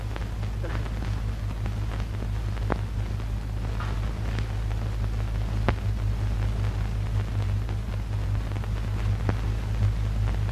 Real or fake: real